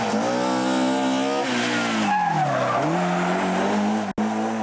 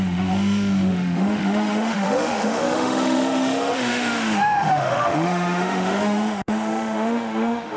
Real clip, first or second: first